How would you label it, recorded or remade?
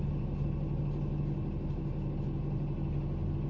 recorded